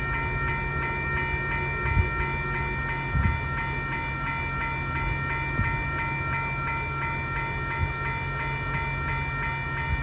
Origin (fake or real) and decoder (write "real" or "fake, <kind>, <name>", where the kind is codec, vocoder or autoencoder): real